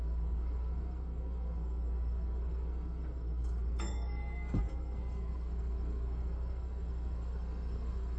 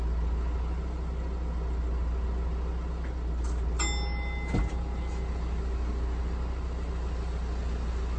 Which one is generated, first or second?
first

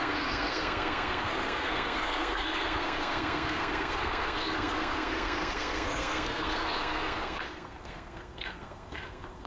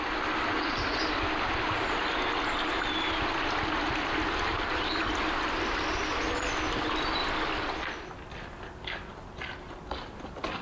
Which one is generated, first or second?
first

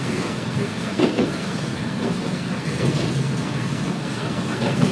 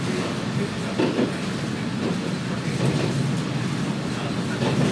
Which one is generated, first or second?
first